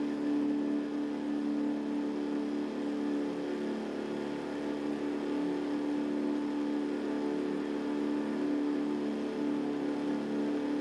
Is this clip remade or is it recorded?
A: recorded